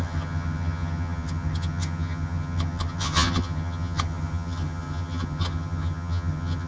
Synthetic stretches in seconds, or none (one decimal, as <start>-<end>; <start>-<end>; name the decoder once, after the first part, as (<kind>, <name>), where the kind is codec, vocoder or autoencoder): 0.0-6.7 (vocoder, HiFi-GAN)